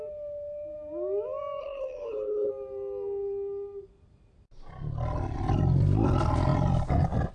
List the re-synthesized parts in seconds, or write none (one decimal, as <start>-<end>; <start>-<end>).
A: 1.6-2.5